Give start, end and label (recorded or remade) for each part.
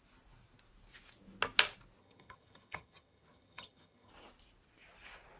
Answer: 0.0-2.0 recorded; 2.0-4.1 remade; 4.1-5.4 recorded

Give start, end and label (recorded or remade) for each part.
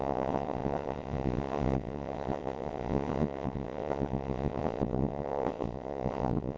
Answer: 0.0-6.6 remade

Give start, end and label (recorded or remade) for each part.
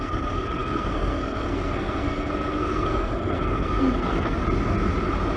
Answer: 0.0-4.4 remade; 4.4-5.4 recorded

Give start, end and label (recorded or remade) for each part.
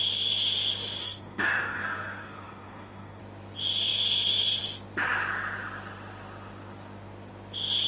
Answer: 0.0-1.0 recorded; 1.0-3.2 remade; 3.2-7.9 recorded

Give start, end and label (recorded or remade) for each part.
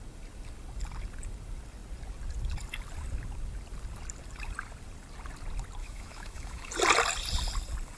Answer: 0.0-5.8 recorded; 5.8-6.7 remade; 6.7-8.0 recorded